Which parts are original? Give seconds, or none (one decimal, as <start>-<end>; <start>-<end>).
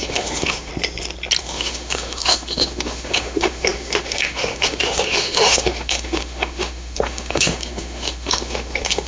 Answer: 0.7-1.4